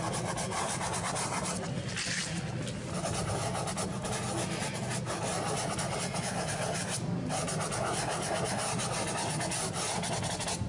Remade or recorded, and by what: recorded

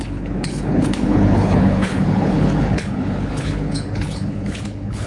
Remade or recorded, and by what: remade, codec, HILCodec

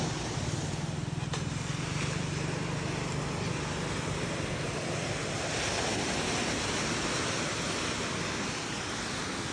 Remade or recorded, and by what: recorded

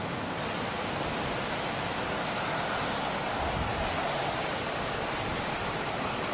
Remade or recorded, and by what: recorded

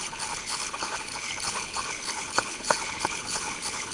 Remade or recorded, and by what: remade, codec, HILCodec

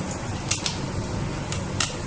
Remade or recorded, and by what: recorded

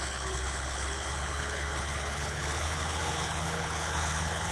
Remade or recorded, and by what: remade, codec, HILCodec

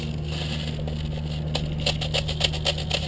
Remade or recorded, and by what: recorded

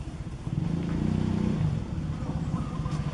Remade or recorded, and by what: recorded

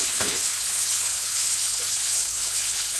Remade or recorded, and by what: remade, codec, HILCodec